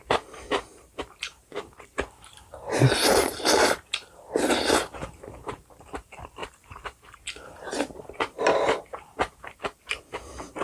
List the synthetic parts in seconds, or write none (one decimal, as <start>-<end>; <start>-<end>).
0.0-10.6